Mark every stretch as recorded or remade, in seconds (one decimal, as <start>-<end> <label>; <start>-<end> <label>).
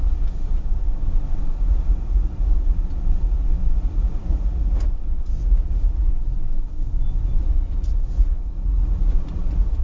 0.0-0.9 remade; 0.9-1.7 recorded; 1.7-6.1 remade; 6.1-7.4 recorded; 7.4-9.8 remade